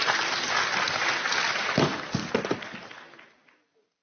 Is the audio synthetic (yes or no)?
no